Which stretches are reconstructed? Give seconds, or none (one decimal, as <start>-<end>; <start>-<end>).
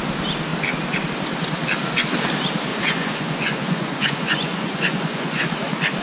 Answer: 2.7-5.5